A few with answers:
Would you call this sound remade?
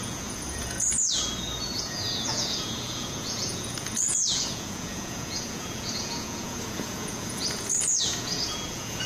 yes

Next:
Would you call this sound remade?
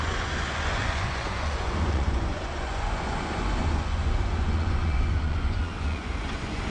yes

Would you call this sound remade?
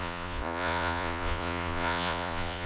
yes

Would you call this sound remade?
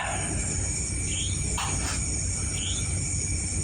no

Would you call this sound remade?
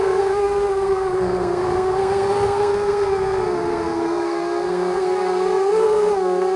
yes